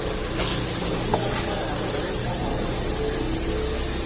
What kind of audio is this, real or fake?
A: real